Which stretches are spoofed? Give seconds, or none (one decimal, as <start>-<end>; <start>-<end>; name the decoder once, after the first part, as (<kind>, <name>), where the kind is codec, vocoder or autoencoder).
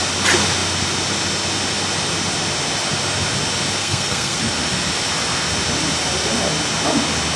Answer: 3.8-4.4 (codec, SNAC)